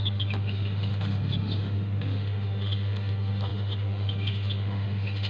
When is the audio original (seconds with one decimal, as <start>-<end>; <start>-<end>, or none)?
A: none